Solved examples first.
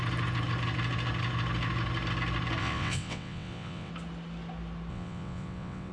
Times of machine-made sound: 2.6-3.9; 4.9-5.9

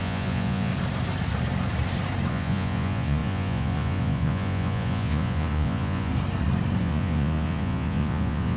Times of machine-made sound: 0.0-0.7; 2.3-6.1; 6.8-8.6

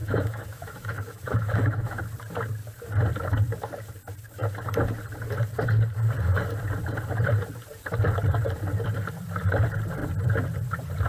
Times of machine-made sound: 0.0-2.0

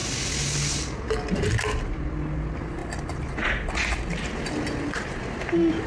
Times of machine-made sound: none